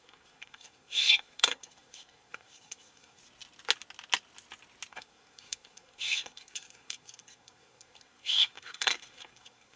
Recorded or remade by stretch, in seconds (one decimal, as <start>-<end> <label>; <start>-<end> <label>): 0.0-3.2 remade; 3.2-4.9 recorded; 4.9-9.8 remade